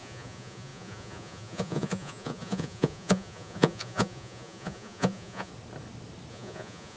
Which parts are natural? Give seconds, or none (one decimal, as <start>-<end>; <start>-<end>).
5.5-6.3

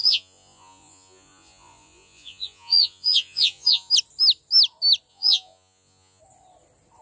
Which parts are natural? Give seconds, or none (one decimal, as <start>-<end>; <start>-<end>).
3.9-5.1; 6.2-7.0